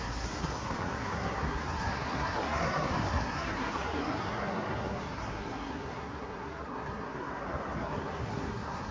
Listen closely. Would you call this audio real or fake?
fake